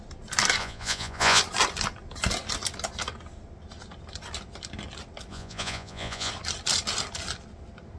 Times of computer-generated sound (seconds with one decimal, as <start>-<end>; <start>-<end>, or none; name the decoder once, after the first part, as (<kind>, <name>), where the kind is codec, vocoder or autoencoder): 0.6-1.4 (vocoder, Vocos); 5.3-6.3